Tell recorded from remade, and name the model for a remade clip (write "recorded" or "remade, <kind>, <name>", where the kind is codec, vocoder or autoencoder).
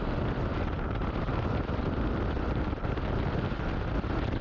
recorded